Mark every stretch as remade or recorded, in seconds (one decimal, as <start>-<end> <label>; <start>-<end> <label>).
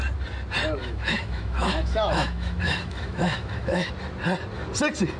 0.0-0.8 recorded; 0.8-3.9 remade; 3.9-5.2 recorded